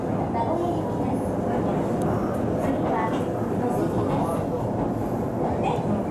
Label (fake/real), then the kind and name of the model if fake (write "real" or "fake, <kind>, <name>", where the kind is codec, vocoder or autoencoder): real